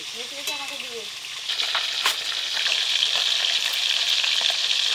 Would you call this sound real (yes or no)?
no